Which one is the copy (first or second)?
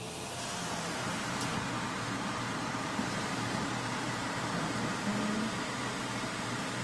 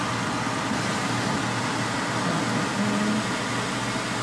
first